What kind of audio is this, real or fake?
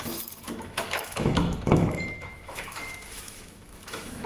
fake